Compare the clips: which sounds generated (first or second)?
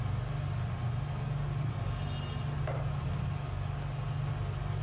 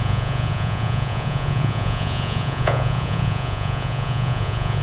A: second